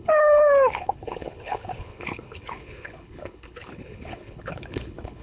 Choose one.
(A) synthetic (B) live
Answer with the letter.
A